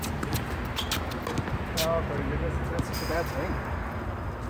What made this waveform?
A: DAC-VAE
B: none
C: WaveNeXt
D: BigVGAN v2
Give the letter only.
B